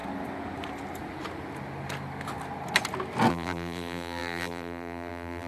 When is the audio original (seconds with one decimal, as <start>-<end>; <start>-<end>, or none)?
0.0-3.3